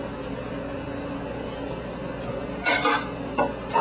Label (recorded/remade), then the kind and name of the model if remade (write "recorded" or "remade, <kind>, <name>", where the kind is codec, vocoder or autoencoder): recorded